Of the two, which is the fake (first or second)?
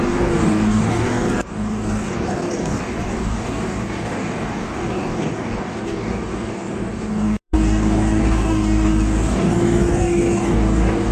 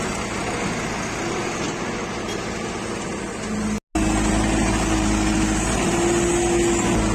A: first